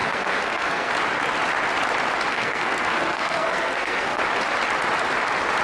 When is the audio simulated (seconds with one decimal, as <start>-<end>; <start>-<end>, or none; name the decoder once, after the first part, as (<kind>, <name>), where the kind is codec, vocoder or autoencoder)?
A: 0.0-0.9 (codec, SNAC); 2.3-4.2